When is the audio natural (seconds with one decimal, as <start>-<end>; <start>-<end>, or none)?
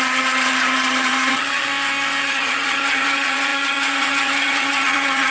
1.7-2.2